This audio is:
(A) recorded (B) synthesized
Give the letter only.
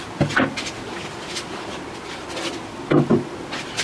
A